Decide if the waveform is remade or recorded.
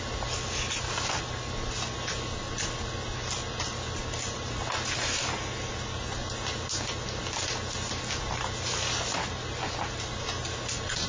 recorded